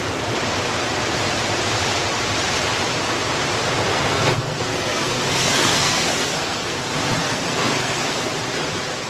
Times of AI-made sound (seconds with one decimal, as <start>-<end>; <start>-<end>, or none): 3.9-6.8; 7.2-8.2